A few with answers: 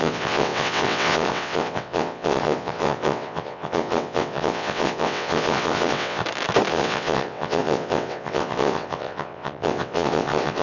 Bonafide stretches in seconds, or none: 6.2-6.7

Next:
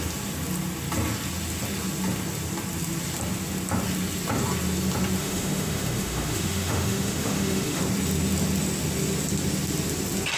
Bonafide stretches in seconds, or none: 0.0-5.2; 7.8-10.4

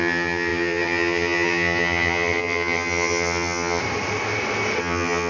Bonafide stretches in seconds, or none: 3.8-4.8

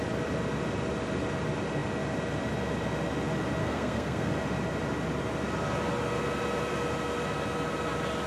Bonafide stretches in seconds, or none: 0.0-3.6; 4.3-8.3

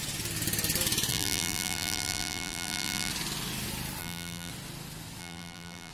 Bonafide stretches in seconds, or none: 0.0-1.1; 3.1-4.0; 4.5-5.2

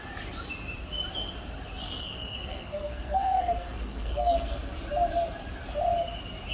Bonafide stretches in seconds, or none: 0.0-1.8; 4.6-6.5